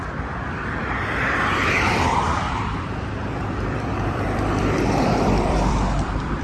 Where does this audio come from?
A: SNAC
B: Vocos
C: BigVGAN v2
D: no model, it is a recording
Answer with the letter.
C